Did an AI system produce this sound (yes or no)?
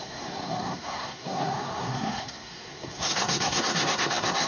yes